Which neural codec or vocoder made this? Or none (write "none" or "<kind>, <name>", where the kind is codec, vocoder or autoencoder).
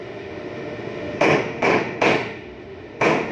autoencoder, DAC-VAE